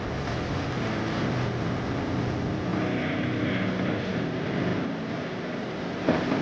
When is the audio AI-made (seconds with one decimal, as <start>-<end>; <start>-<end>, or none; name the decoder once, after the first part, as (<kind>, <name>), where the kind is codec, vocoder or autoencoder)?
none

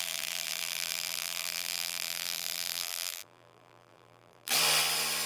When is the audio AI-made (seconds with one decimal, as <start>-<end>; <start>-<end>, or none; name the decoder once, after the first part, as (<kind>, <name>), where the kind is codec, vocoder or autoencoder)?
0.0-4.5 (vocoder, BigVGAN v2)

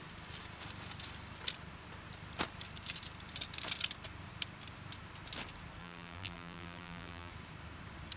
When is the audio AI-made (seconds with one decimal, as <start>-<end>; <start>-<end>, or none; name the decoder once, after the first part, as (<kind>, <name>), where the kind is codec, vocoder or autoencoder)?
5.8-7.3 (vocoder, BigVGAN v2)

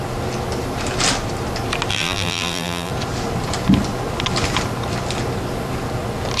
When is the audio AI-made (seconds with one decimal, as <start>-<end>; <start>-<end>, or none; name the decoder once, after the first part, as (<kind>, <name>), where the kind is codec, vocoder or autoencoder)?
1.9-2.9 (vocoder, BigVGAN v2)

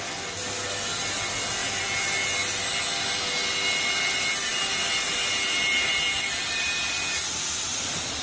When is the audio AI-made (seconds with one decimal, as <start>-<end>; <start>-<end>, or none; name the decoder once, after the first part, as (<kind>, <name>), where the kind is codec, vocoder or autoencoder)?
none

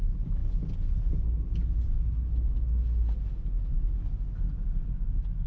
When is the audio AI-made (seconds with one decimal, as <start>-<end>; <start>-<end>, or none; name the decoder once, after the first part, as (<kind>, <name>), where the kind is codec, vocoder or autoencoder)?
none

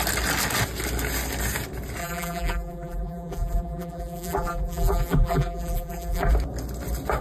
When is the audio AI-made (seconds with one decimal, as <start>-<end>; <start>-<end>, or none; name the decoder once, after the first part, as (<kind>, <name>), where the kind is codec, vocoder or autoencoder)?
2.0-6.3 (vocoder, BigVGAN v2)

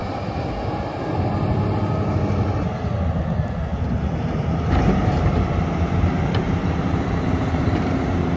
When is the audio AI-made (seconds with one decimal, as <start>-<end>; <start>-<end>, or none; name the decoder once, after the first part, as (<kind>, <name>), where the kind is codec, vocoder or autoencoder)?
3.7-8.4 (vocoder, BigVGAN v2)